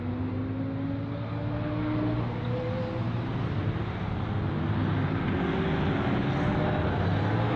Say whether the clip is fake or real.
real